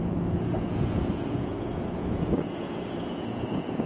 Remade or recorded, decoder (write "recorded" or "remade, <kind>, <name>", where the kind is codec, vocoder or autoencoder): remade, vocoder, Vocos